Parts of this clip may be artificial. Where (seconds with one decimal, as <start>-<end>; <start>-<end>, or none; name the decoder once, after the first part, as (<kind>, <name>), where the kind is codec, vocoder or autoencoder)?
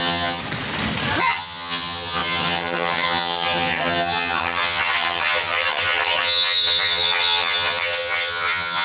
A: 0.0-0.4 (vocoder, HiFi-GAN); 1.2-8.8